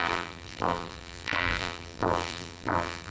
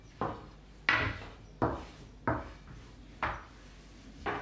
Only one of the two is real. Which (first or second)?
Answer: second